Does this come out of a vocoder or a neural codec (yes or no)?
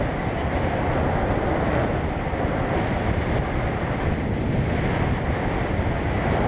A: no